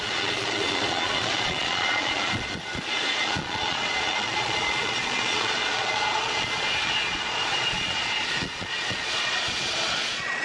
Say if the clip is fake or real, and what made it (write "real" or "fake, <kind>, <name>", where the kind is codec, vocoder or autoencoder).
fake, vocoder, Vocos